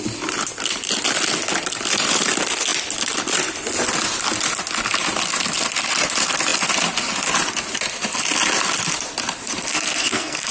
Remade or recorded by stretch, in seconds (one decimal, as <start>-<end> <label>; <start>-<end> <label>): 0.0-9.7 recorded; 9.7-10.5 remade